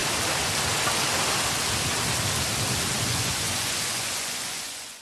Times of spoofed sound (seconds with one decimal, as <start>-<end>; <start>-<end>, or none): 3.0-5.0